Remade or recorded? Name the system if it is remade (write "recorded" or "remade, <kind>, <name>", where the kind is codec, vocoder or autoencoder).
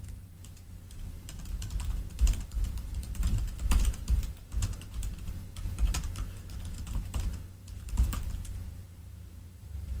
remade, vocoder, BigVGAN v2